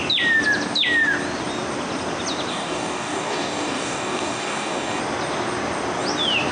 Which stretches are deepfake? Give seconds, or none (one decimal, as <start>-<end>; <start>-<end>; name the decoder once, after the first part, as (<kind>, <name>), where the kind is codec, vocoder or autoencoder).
2.5-5.0 (codec, DAC)